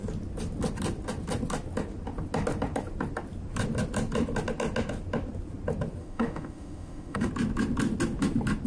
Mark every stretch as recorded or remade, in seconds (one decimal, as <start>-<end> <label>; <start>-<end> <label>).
0.0-6.0 recorded; 6.0-7.3 remade; 7.3-8.7 recorded